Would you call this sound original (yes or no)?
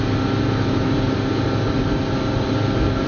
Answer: yes